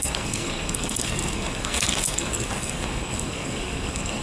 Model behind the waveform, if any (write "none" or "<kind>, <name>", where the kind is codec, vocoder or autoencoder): codec, SNAC